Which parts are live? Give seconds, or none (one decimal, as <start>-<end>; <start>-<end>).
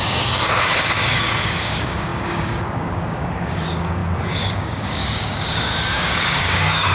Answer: none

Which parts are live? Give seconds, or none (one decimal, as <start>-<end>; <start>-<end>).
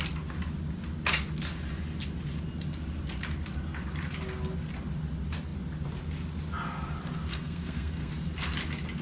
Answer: 0.0-7.3; 8.1-9.0